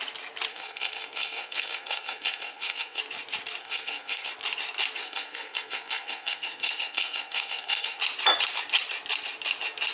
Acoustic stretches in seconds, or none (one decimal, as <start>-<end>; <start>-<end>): 0.0-0.5; 3.0-3.6; 4.3-5.0; 8.0-9.9